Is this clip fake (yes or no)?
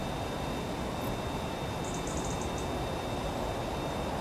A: no